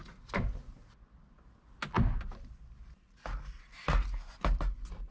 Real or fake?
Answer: real